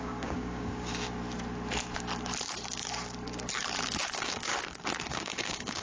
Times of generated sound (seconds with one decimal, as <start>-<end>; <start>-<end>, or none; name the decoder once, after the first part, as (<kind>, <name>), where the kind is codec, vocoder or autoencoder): 0.0-0.9 (codec, DAC); 4.1-4.5; 5.1-5.8